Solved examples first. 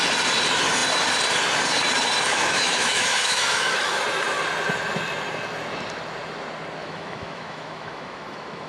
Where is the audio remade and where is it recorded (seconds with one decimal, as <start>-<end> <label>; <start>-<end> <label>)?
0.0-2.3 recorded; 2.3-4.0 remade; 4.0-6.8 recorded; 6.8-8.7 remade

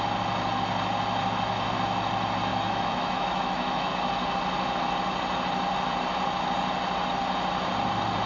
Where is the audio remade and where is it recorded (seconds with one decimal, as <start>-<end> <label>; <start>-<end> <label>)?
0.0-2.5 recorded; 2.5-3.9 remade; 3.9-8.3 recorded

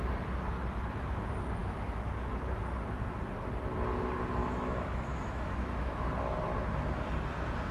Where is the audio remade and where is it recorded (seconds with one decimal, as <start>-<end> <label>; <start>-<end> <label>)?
0.0-1.6 recorded; 1.6-2.1 remade; 2.1-4.4 recorded; 4.4-6.1 remade; 6.1-7.7 recorded

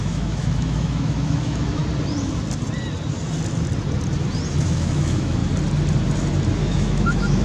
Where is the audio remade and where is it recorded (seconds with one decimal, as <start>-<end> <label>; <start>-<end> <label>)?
0.0-1.8 remade; 1.8-4.6 recorded; 4.6-5.4 remade; 5.4-6.6 recorded; 6.6-7.4 remade